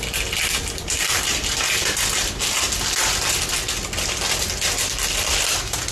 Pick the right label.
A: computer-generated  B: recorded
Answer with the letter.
B